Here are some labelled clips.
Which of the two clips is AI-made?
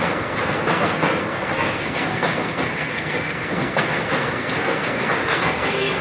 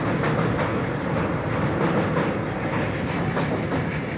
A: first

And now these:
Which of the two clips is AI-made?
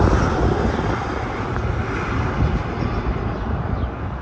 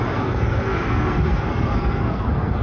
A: second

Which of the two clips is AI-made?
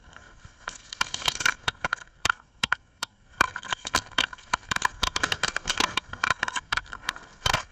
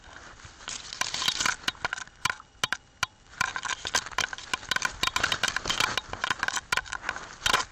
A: first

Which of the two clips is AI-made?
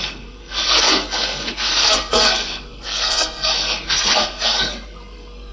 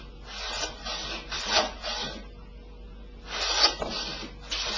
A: first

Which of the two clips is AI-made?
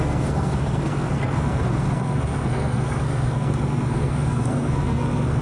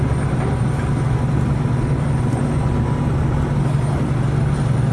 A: first